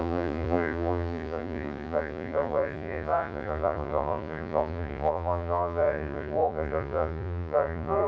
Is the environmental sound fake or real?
fake